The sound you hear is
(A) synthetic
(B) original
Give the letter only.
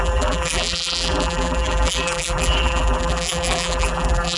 A